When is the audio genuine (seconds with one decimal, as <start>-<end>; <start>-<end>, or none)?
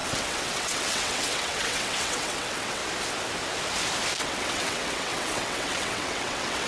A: 2.8-4.2